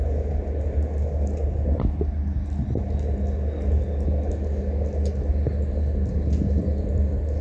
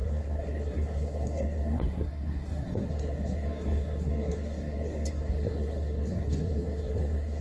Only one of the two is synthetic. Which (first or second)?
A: second